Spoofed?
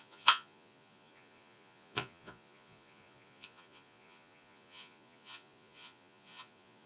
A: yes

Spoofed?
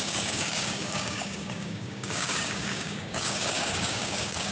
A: yes